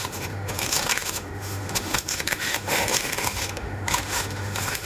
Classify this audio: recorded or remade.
remade